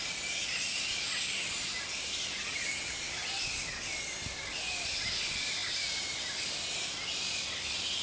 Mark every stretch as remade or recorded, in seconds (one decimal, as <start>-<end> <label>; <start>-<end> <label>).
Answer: 0.0-8.0 recorded